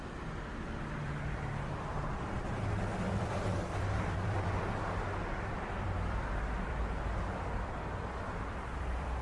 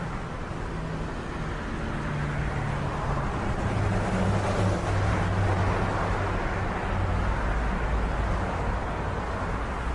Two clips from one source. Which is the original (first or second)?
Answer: second